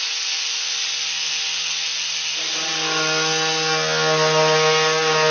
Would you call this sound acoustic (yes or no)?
yes